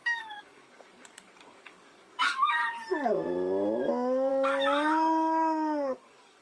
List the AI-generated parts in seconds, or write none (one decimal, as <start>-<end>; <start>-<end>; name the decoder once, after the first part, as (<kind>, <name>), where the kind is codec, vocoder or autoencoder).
0.0-2.6 (codec, DAC); 4.3-6.4